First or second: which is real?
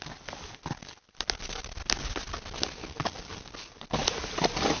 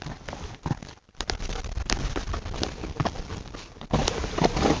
first